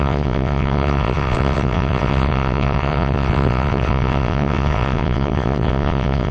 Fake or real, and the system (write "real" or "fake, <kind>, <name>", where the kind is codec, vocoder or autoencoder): fake, vocoder, WaveNeXt